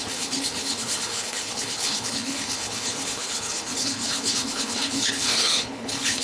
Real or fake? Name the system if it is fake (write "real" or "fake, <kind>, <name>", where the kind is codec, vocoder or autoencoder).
fake, codec, HILCodec